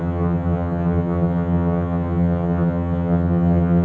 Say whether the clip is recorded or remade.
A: remade